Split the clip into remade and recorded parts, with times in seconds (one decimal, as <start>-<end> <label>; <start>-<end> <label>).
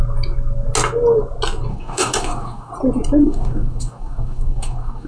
0.0-1.7 recorded; 1.7-2.7 remade; 2.7-3.2 recorded; 3.2-5.1 remade